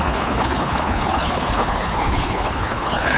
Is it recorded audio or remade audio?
remade